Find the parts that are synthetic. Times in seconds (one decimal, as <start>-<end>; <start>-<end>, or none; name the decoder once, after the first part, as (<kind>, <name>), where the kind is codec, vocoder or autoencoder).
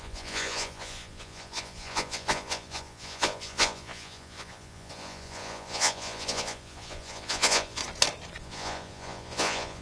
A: 0.0-7.8 (vocoder, Vocos); 8.4-9.8